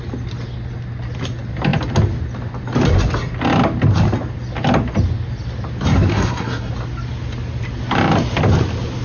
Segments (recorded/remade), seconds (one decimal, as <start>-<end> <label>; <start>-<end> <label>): 0.0-6.1 recorded; 6.1-6.7 remade; 6.7-9.0 recorded